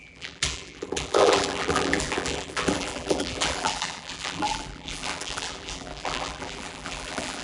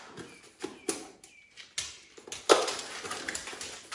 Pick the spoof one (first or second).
first